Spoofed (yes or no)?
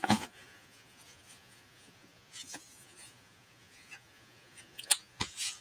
yes